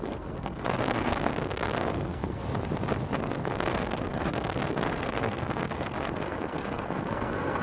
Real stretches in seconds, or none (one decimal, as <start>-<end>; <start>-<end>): 2.4-3.2